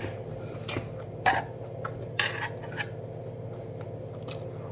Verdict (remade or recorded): recorded